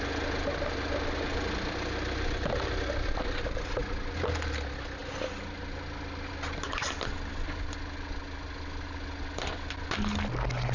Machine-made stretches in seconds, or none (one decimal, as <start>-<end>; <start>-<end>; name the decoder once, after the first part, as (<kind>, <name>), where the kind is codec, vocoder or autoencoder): none